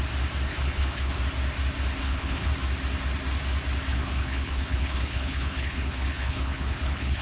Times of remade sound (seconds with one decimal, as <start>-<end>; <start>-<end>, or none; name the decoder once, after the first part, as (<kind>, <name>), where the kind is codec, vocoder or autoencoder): 0.5-1.2 (codec, HILCodec); 2.0-2.5; 3.9-7.2